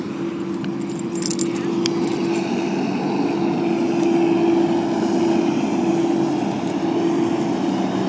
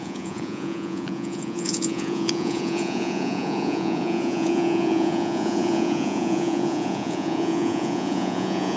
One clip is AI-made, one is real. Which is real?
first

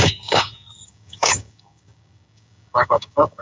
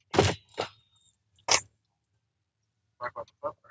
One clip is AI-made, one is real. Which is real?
second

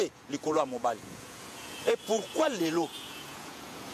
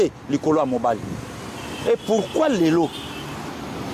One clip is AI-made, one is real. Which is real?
second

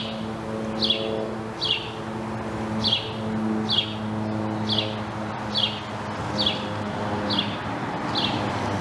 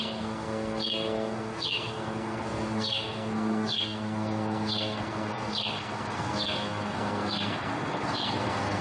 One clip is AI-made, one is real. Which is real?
first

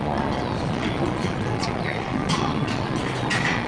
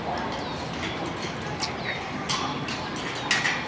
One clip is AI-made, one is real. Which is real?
second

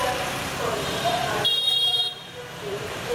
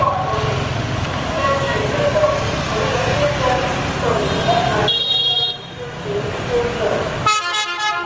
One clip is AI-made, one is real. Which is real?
second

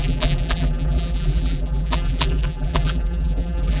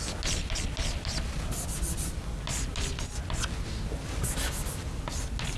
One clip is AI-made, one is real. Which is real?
second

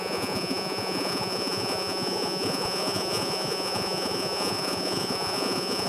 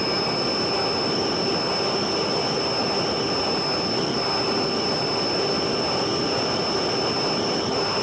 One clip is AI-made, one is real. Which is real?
second